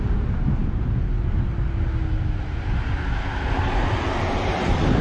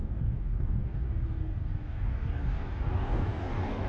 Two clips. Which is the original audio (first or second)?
first